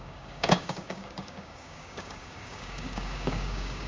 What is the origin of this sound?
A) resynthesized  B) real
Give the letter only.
A